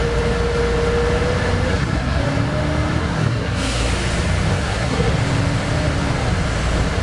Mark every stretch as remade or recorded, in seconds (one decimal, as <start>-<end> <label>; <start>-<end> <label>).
0.0-1.7 recorded; 1.7-2.2 remade; 2.2-3.0 recorded; 3.0-3.9 remade; 3.9-4.5 recorded; 4.5-5.1 remade; 5.1-7.0 recorded